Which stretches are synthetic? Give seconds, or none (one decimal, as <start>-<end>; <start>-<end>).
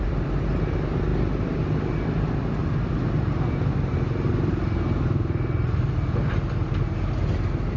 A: none